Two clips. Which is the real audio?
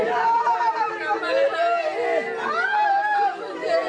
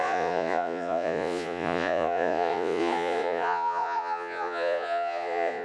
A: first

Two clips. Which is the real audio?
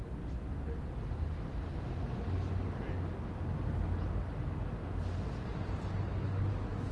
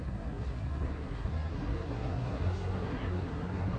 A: first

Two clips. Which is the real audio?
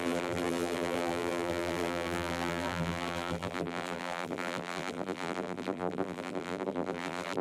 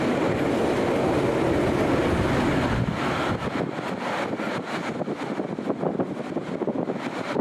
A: second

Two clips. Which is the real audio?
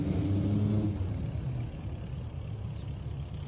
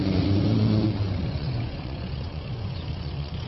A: first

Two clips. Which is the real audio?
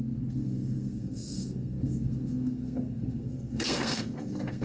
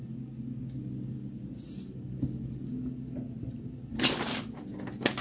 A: second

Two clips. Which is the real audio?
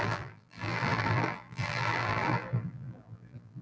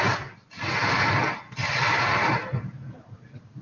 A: second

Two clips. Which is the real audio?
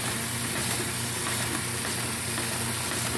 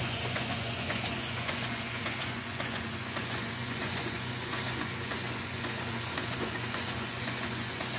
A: first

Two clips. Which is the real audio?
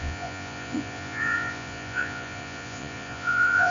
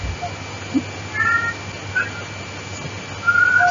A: second